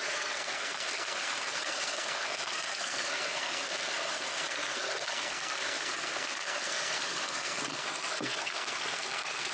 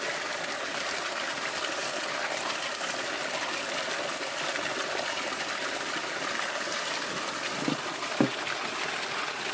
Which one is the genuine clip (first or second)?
second